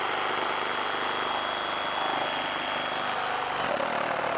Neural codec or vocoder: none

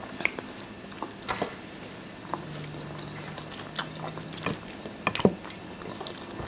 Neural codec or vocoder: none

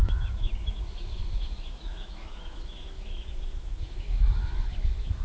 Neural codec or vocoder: autoencoder, DAC-VAE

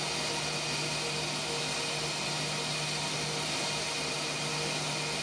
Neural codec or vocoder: none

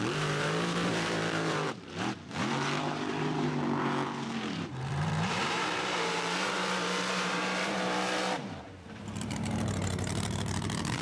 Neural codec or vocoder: vocoder, BigVGAN v2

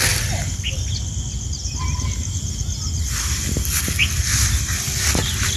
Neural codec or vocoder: none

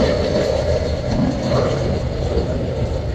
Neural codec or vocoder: none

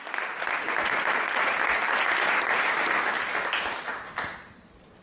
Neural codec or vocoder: none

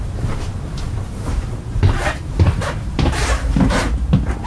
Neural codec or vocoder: vocoder, BigVGAN v2